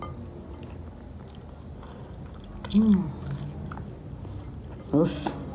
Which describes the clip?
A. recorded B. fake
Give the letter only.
A